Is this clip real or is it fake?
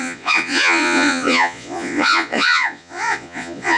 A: fake